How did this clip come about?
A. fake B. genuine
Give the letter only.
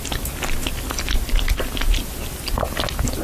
B